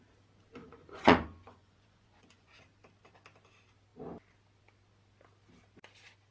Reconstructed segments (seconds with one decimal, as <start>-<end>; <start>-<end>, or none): 0.6-2.5